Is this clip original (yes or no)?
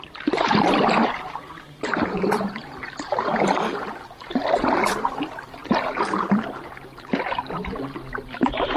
no